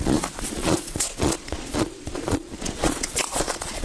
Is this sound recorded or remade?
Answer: remade